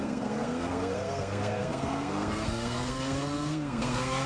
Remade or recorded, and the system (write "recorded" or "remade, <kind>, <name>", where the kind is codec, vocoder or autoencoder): remade, codec, SNAC